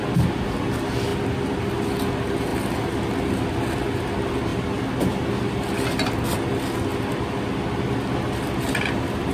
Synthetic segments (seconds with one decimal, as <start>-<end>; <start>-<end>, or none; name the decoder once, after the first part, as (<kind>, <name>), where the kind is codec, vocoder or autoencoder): none